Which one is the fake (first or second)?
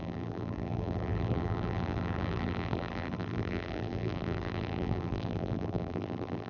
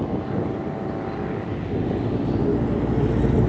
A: first